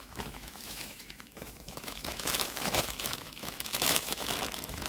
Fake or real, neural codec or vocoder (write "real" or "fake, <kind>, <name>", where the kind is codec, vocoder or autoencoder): fake, autoencoder, DAC-VAE